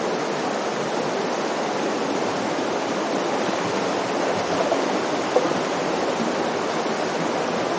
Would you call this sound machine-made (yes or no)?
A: no